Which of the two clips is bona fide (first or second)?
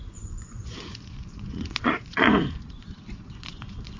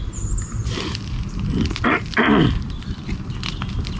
second